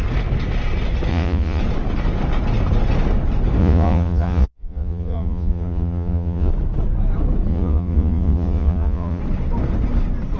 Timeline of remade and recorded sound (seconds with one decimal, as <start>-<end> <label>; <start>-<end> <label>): 0.0-1.1 recorded; 1.1-1.6 remade; 1.6-3.6 recorded; 3.6-6.5 remade; 6.5-7.5 recorded; 7.5-9.2 remade; 9.2-10.4 recorded